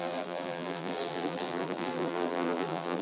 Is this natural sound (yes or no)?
no